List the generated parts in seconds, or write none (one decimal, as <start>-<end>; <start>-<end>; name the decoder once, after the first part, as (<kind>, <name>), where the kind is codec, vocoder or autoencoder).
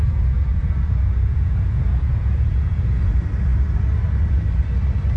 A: 0.0-3.1 (vocoder, Vocos)